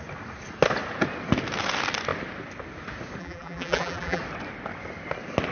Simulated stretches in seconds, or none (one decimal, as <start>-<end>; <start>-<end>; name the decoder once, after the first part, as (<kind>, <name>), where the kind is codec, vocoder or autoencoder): 3.2-4.2 (vocoder, BigVGAN v2)